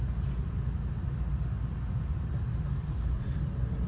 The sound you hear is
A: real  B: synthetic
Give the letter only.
A